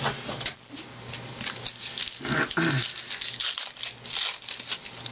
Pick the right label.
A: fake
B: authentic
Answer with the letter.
B